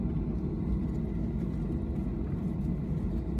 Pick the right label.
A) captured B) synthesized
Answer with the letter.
A